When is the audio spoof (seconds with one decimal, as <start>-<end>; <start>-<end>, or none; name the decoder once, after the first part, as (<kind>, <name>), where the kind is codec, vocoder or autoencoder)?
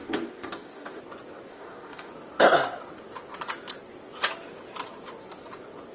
0.0-1.0 (codec, DAC); 1.5-2.1